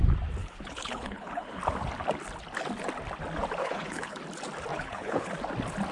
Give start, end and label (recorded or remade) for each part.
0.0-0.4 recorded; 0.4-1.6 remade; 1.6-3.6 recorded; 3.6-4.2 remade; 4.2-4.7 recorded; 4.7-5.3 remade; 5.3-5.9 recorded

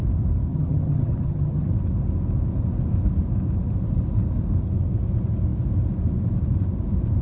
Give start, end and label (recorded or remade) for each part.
0.0-0.5 recorded; 0.5-1.7 remade; 1.7-7.2 recorded

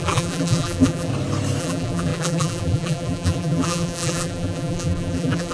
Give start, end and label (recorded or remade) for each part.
0.0-1.1 remade; 1.1-1.6 recorded; 1.6-5.5 remade

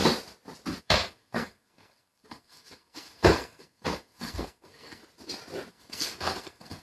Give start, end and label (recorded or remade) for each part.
0.0-0.8 recorded; 0.8-5.0 remade; 5.0-5.7 recorded; 5.7-6.8 remade